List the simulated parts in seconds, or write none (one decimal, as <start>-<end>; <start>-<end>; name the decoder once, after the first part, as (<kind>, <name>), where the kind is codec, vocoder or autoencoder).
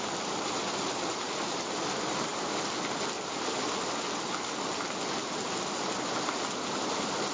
none